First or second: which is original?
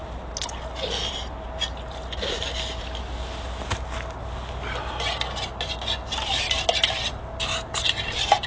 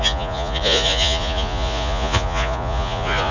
first